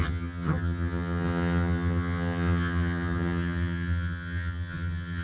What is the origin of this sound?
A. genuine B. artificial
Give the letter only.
B